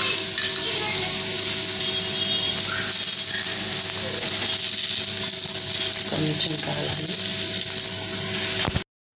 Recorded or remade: recorded